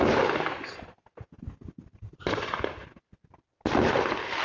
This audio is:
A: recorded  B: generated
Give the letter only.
A